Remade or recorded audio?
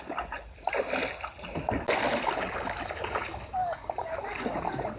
recorded